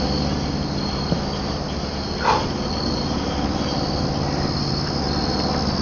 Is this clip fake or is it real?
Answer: real